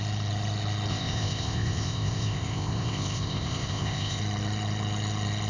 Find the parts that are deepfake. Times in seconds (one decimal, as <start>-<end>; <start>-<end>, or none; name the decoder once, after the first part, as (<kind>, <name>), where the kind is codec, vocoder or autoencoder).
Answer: 0.9-4.2 (codec, ZipCodec)